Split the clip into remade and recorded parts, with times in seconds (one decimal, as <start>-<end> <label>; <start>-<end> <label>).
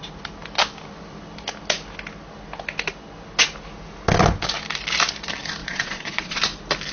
0.0-5.6 recorded; 5.6-6.4 remade; 6.4-6.9 recorded